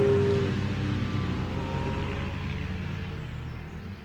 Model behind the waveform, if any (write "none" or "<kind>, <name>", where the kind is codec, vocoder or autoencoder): none